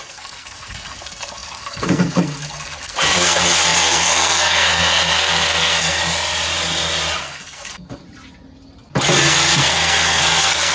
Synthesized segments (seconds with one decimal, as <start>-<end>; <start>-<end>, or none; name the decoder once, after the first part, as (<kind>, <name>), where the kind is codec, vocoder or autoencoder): 0.0-6.0 (codec, SNAC); 7.2-8.0; 9.3-10.7